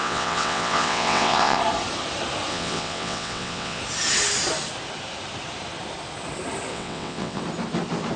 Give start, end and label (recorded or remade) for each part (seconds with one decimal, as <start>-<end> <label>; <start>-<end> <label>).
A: 0.0-1.6 remade; 1.6-2.5 recorded; 2.5-3.8 remade; 3.8-6.7 recorded; 6.7-7.4 remade; 7.4-8.2 recorded